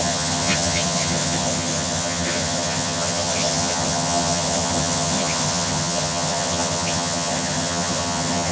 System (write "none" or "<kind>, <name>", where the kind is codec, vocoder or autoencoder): vocoder, HiFi-GAN